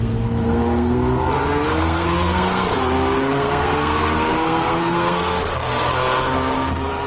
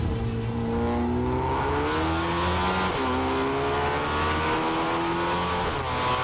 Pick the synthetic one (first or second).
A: first